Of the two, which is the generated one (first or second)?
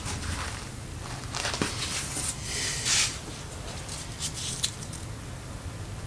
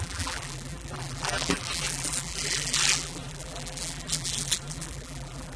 second